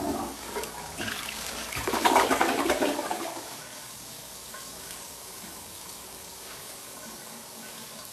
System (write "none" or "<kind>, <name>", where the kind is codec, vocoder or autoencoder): codec, DAC